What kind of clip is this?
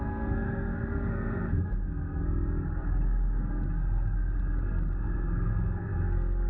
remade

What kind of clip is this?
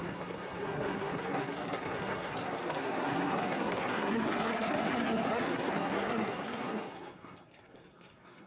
remade